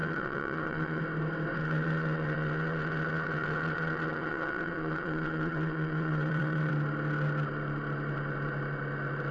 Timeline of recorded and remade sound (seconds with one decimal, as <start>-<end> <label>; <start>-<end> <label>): 0.0-1.0 remade; 1.0-1.6 recorded; 1.6-6.7 remade; 6.7-9.3 recorded